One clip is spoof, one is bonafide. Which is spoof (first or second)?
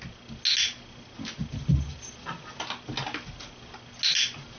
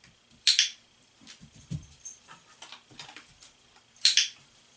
second